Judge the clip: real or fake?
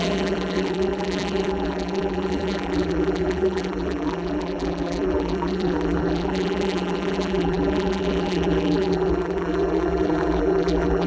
fake